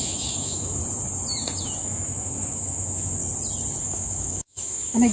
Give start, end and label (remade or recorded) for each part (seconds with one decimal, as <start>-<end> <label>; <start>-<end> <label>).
0.0-0.8 remade; 0.8-1.8 recorded; 1.8-3.2 remade; 3.2-3.8 recorded; 3.8-5.1 remade